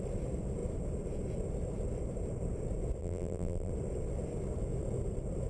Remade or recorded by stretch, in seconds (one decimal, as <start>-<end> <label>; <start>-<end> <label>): 0.0-3.0 recorded; 3.0-3.7 remade; 3.7-5.5 recorded